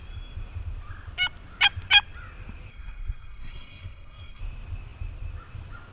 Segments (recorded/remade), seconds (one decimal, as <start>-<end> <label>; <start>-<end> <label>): 0.0-2.7 recorded; 2.7-4.4 remade; 4.4-5.9 recorded